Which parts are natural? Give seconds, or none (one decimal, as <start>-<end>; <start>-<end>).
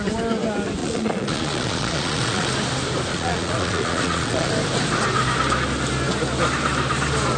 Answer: 0.0-0.8; 2.5-3.1; 4.5-7.4